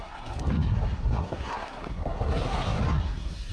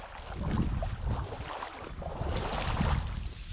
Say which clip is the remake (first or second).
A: first